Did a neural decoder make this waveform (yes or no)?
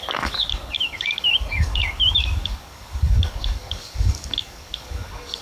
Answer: yes